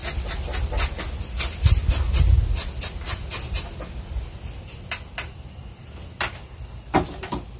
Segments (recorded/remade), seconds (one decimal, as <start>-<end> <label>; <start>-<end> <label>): 0.0-7.6 recorded